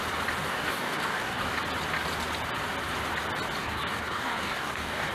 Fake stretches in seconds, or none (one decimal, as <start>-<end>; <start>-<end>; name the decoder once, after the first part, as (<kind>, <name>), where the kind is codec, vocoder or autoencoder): 0.5-1.5 (codec, DAC); 3.6-5.1